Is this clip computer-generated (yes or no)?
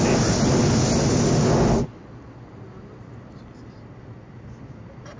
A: no